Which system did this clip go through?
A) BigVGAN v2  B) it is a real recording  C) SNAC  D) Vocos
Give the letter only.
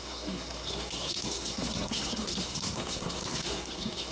C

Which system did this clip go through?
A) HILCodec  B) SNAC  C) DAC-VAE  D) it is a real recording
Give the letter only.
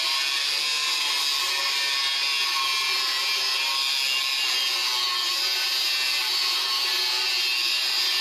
D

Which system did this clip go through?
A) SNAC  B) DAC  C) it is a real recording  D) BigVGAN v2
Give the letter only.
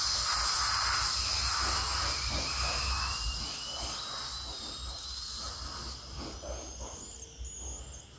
C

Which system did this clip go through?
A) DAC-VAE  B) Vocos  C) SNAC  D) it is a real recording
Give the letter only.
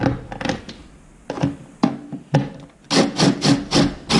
D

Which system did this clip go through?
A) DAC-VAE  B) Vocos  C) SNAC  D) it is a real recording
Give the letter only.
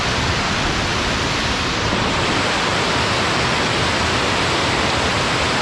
D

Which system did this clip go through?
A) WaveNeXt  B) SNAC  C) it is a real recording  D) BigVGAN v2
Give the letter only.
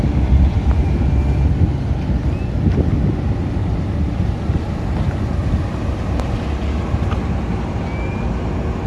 C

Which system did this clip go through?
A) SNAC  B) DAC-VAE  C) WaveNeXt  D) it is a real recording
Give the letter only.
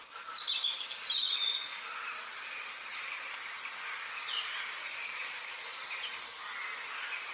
D